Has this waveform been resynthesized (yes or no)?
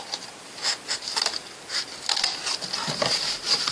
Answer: no